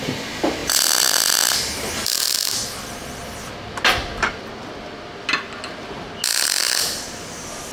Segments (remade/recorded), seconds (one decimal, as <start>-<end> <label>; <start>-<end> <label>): 0.0-7.7 recorded